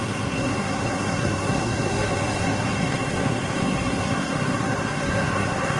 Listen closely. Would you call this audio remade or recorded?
remade